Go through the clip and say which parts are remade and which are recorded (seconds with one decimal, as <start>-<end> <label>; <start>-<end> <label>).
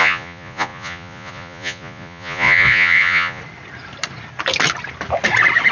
0.0-3.4 remade; 3.4-5.7 recorded